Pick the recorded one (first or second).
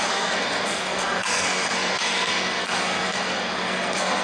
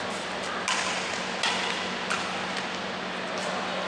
second